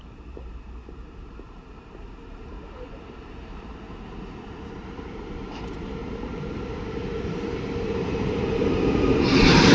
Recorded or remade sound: remade